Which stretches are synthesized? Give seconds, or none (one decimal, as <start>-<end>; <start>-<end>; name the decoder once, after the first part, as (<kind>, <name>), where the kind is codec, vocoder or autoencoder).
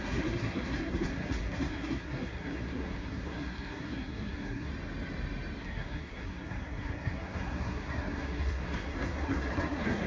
0.0-4.7 (codec, SNAC); 5.6-10.1